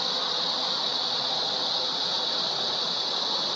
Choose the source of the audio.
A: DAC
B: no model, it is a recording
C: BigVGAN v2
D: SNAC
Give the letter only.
B